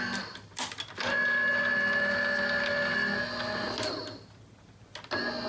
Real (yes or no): yes